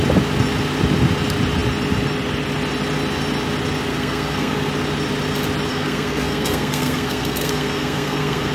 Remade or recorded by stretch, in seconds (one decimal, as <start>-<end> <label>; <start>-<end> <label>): 0.0-3.9 recorded; 3.9-4.7 remade; 4.7-5.7 recorded; 5.7-8.5 remade